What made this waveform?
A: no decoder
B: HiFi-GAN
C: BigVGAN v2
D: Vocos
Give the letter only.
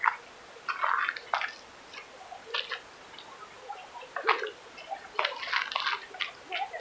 A